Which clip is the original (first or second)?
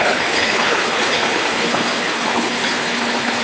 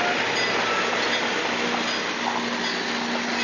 second